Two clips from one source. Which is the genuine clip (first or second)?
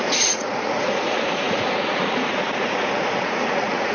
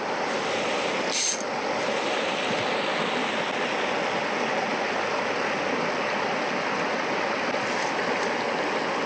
second